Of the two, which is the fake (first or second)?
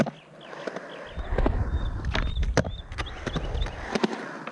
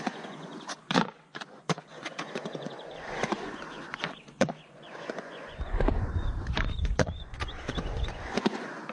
second